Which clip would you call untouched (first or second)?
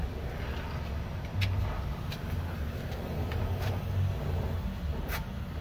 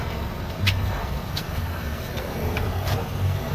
first